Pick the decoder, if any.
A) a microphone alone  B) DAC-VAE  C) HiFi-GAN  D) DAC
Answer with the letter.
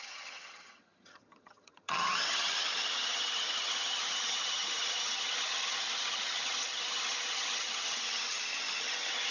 C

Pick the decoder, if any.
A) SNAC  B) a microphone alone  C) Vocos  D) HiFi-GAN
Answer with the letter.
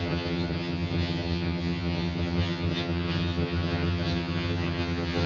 D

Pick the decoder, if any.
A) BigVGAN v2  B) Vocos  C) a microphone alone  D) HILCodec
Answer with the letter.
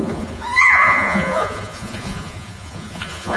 B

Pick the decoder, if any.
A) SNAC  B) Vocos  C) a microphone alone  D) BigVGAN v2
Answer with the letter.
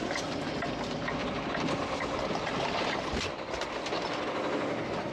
C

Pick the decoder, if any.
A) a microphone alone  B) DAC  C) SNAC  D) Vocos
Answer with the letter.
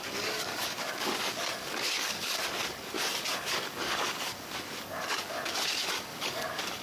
B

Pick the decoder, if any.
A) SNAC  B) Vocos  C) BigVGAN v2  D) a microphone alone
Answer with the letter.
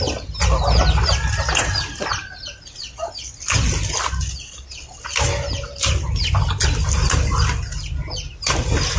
D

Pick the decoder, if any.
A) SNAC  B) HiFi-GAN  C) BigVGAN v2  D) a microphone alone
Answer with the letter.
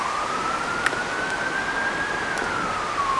C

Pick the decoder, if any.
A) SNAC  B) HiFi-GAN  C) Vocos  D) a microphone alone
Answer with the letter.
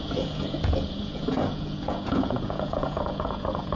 C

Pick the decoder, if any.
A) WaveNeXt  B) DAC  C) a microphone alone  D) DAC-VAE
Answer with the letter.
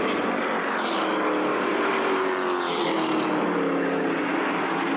C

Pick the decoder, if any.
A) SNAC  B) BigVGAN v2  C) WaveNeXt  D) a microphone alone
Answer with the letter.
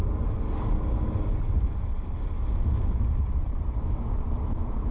D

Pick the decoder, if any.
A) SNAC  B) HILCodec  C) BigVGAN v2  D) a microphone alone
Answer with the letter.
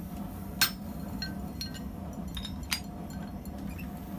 D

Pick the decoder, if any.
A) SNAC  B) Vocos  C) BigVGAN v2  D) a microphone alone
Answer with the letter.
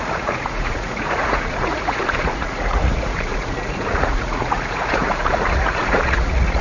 B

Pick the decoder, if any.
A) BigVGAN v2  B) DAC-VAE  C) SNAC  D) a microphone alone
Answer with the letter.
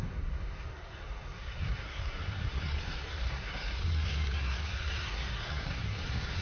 C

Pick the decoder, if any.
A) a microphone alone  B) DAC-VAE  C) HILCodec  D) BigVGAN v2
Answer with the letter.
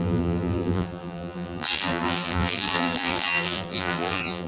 D